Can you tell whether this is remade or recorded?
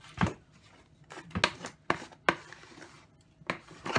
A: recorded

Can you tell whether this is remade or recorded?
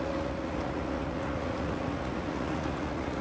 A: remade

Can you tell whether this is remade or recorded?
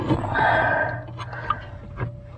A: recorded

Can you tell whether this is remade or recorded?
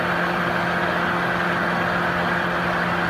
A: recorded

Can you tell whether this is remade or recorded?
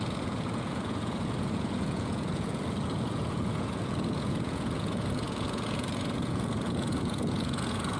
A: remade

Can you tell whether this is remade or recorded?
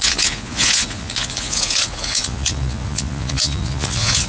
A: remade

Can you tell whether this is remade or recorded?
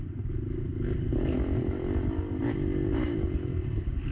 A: recorded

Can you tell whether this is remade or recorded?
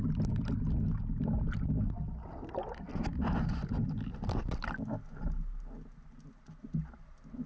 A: recorded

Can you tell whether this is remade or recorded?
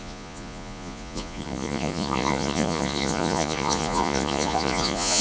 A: remade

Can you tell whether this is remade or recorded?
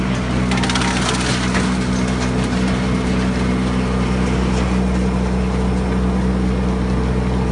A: recorded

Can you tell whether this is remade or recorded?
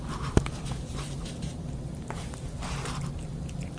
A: recorded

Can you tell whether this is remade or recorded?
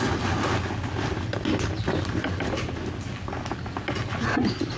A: recorded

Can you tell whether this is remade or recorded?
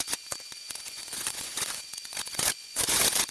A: remade